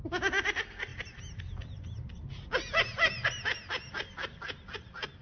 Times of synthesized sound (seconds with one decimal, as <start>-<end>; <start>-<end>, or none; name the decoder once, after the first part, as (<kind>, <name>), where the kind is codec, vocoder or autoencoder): none